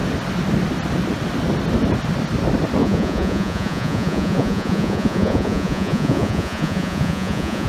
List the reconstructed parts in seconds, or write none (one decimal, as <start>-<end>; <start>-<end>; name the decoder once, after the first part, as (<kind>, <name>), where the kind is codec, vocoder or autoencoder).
2.8-7.7 (vocoder, Vocos)